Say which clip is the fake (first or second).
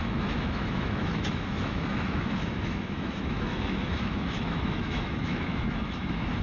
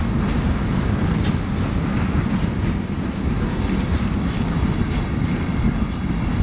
first